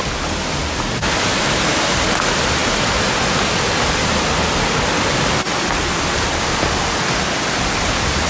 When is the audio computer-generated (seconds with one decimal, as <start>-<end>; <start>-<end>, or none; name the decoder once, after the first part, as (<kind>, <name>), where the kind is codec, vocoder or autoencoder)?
none

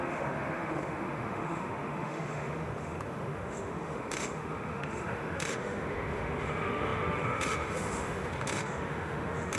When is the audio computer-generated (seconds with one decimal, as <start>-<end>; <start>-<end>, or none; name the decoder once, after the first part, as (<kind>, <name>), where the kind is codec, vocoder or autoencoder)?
0.0-9.6 (autoencoder, DAC-VAE)

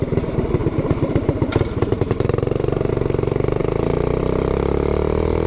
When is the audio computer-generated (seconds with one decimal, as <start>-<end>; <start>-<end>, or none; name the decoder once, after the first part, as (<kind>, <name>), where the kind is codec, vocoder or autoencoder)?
0.6-2.9 (vocoder, BigVGAN v2)